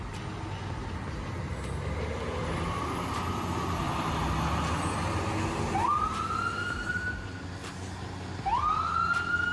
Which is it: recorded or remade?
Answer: recorded